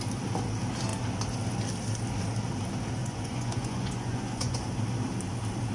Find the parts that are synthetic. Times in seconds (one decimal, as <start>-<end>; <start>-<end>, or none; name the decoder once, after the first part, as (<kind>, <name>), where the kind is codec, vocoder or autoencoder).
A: 3.0-4.7 (vocoder, Vocos)